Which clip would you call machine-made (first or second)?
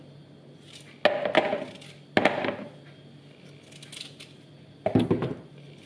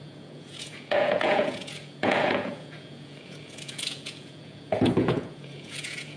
second